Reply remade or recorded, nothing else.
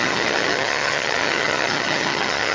remade